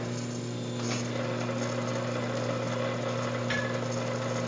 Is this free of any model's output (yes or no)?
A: yes